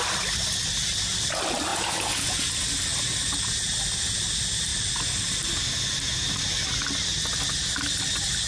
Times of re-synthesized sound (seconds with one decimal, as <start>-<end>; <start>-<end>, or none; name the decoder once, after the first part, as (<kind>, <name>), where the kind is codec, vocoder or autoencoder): 1.7-2.5 (vocoder, Vocos)